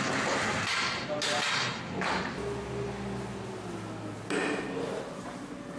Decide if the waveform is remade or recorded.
recorded